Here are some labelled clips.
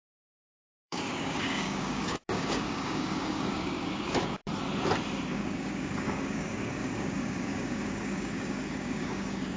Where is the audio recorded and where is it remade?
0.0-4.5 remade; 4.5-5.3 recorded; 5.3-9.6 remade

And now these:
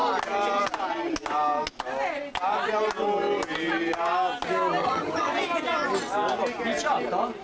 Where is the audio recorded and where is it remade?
0.0-4.8 recorded; 4.8-5.3 remade; 5.3-7.4 recorded

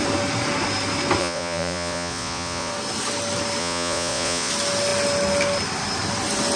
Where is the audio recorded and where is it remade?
0.0-1.2 recorded; 1.2-2.7 remade; 2.7-3.6 recorded; 3.6-4.5 remade; 4.5-6.6 recorded

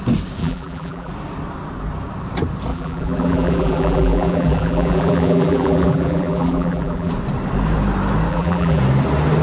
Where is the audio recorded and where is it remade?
0.0-0.4 recorded; 0.4-1.1 remade; 1.1-2.7 recorded; 2.7-7.1 remade; 7.1-8.3 recorded; 8.3-8.8 remade; 8.8-9.4 recorded

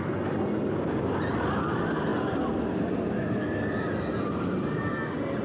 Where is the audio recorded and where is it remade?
0.0-5.4 recorded

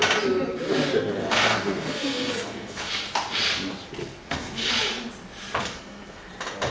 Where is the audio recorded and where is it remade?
0.0-1.2 recorded; 1.2-2.9 remade; 2.9-4.0 recorded; 4.0-4.7 remade; 4.7-5.6 recorded; 5.6-6.3 remade; 6.3-6.7 recorded

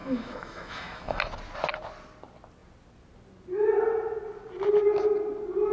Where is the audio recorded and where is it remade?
0.0-1.2 remade; 1.2-5.7 recorded